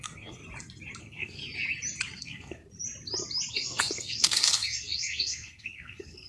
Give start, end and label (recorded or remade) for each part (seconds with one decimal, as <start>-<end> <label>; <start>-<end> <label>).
0.0-0.4 remade; 0.4-1.0 recorded; 1.0-1.4 remade; 1.4-2.2 recorded; 2.2-2.6 remade; 2.6-3.5 recorded; 3.5-6.3 remade